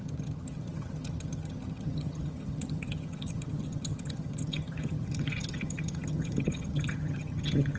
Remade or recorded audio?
remade